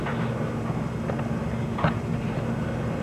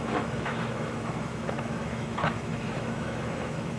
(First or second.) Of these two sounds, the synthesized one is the second